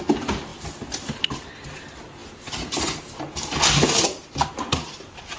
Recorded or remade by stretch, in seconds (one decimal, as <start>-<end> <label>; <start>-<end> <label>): 0.0-5.4 recorded